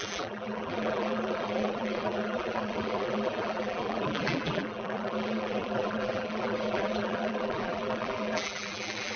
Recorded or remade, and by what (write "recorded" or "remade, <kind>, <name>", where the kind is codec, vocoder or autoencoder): remade, vocoder, BigVGAN v2